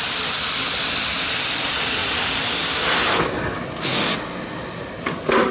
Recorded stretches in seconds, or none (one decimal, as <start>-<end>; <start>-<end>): 0.0-5.5